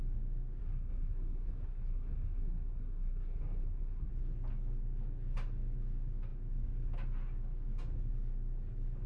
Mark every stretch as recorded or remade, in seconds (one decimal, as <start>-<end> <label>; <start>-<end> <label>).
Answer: 0.0-0.6 recorded; 0.6-4.1 remade; 4.1-9.1 recorded